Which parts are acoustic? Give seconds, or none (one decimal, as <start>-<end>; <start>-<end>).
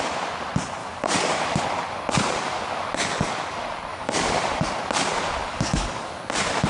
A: 0.0-0.8; 1.6-3.9; 4.4-5.4; 6.1-6.7